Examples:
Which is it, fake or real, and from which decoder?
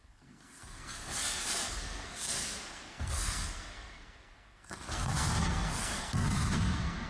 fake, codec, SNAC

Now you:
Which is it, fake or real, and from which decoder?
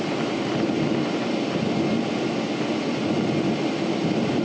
real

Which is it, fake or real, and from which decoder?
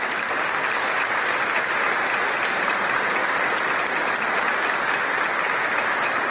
real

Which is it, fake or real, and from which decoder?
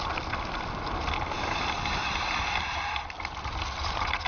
real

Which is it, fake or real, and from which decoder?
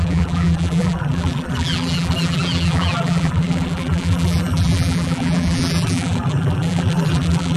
fake, vocoder, BigVGAN v2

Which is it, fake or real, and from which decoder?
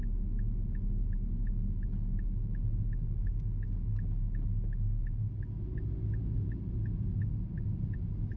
real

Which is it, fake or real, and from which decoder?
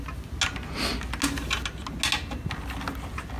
real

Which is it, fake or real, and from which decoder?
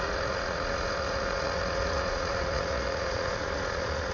fake, vocoder, Vocos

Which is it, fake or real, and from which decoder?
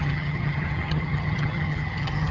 fake, vocoder, HiFi-GAN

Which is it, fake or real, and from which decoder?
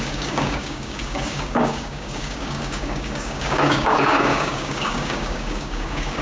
fake, codec, DAC